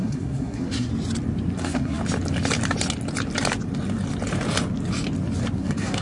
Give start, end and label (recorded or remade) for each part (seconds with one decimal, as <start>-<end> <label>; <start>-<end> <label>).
0.0-0.9 remade; 0.9-1.6 recorded; 1.6-2.0 remade; 2.0-5.6 recorded; 5.6-6.0 remade